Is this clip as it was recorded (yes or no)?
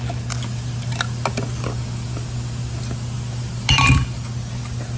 yes